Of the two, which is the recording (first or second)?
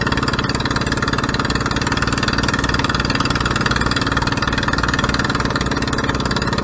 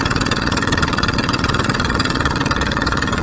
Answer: first